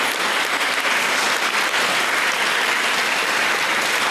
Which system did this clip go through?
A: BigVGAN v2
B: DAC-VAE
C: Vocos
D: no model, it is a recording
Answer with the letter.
D